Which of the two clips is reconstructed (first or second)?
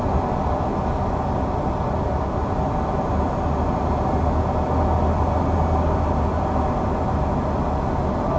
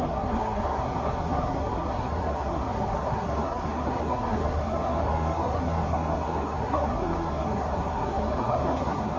second